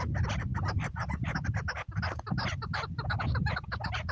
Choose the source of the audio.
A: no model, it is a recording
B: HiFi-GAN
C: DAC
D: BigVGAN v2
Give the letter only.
A